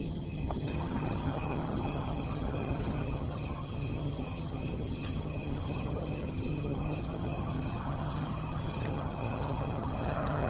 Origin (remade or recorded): remade